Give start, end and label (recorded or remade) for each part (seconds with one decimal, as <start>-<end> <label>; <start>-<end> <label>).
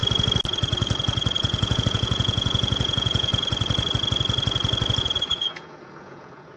0.0-1.4 recorded; 1.4-3.3 remade; 3.3-5.0 recorded; 5.0-6.6 remade